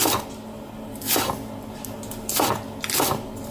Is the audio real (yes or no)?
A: yes